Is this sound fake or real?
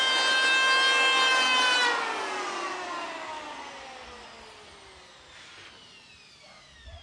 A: real